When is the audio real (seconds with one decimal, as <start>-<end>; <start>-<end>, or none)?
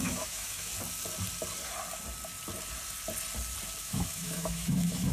0.7-3.8